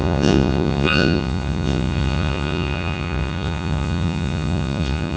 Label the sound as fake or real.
fake